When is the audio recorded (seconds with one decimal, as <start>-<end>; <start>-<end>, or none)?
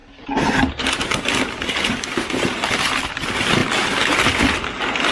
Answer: 0.0-5.1